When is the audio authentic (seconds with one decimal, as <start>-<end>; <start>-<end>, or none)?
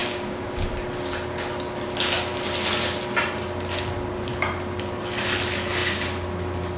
0.7-6.8